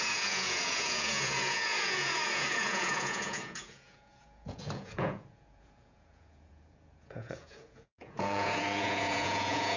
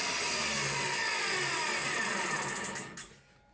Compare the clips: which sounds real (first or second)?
second